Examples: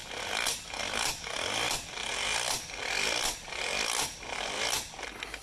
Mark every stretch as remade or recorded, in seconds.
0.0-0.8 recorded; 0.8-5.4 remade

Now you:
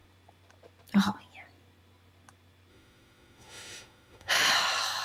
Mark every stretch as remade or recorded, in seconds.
0.0-2.7 recorded; 2.7-4.5 remade; 4.5-5.0 recorded

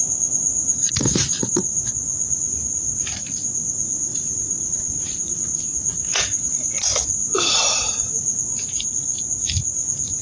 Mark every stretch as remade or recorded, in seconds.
0.0-0.8 recorded; 0.8-1.9 remade; 1.9-4.1 recorded; 4.1-6.5 remade; 6.5-10.2 recorded

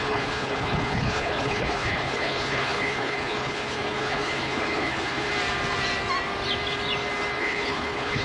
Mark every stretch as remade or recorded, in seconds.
0.0-5.3 remade; 5.3-7.4 recorded; 7.4-8.2 remade

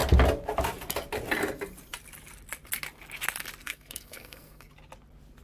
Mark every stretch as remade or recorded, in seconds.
0.0-3.6 recorded; 3.6-4.7 remade; 4.7-5.4 recorded